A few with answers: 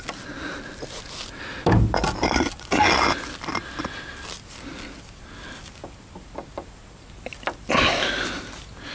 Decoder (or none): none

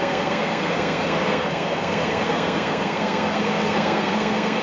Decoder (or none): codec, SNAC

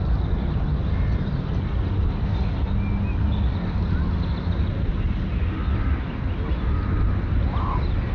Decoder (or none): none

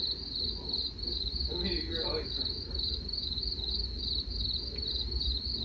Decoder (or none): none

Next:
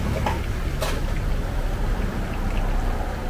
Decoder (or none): none